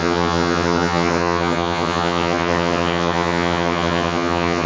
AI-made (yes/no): yes